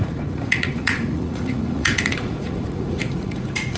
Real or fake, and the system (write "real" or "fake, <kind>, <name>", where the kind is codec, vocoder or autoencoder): fake, vocoder, Vocos